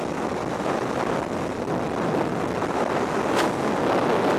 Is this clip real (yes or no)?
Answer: yes